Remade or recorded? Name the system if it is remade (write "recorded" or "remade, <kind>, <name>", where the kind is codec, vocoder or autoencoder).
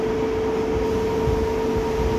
recorded